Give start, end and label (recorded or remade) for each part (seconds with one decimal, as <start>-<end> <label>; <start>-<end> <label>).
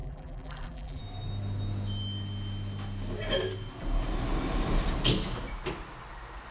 0.0-1.0 remade; 1.0-6.5 recorded